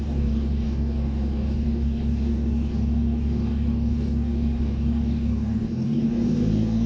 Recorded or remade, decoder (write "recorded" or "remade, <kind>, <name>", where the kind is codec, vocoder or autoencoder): remade, codec, DAC